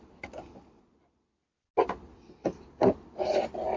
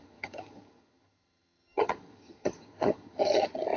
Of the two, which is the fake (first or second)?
second